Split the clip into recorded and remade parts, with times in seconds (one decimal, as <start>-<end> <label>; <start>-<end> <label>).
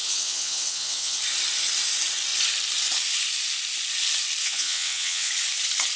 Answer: 0.0-1.2 remade; 1.2-4.4 recorded; 4.4-5.3 remade; 5.3-6.0 recorded